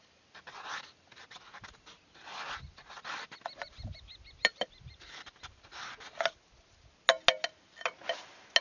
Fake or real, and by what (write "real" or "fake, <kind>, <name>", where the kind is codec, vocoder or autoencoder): real